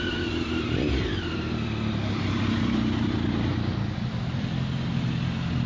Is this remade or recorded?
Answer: recorded